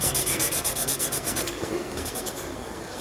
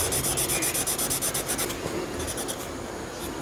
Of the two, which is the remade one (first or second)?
first